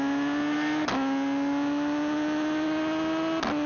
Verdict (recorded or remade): recorded